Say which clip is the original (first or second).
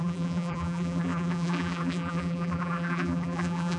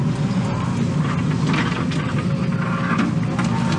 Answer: second